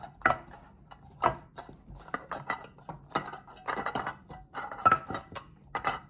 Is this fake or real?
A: real